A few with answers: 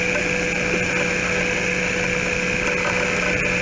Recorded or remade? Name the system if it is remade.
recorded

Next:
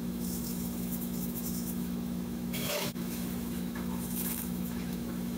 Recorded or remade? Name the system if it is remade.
remade, autoencoder, DAC-VAE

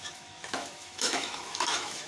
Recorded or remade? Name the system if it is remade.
remade, autoencoder, DAC-VAE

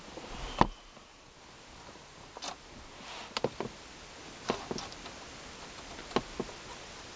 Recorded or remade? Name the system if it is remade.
recorded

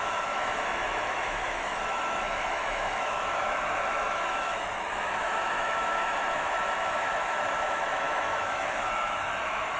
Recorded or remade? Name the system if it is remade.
remade, autoencoder, DAC-VAE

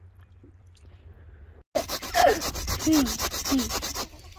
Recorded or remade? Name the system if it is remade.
recorded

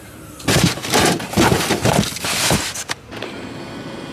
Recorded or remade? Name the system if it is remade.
recorded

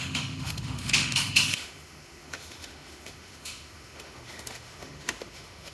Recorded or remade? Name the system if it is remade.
remade, autoencoder, DAC-VAE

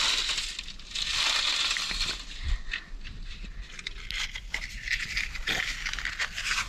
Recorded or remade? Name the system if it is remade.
recorded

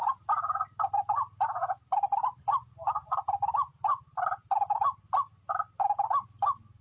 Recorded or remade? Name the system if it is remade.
recorded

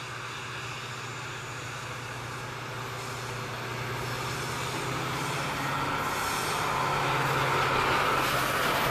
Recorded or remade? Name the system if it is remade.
recorded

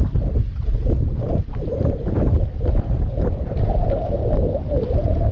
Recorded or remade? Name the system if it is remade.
recorded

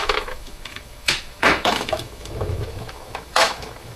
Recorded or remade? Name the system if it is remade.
remade, autoencoder, DAC-VAE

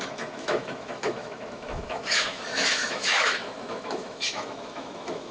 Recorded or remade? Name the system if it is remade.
remade, autoencoder, DAC-VAE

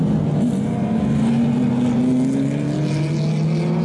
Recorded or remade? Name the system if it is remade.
recorded